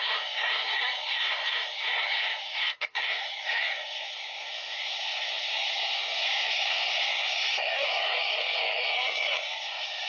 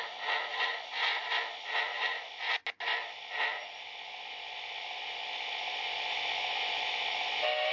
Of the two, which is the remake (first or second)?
first